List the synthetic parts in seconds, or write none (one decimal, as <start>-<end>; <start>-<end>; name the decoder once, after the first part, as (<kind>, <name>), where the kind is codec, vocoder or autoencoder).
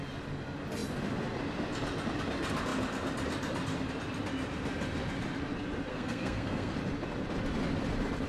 5.9-6.7 (codec, SNAC)